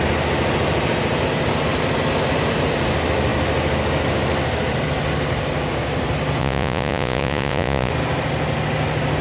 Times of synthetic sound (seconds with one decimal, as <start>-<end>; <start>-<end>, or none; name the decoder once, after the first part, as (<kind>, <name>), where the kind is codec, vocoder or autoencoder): 6.4-7.9 (vocoder, Vocos)